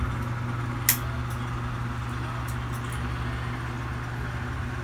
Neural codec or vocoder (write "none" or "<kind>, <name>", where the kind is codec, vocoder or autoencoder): none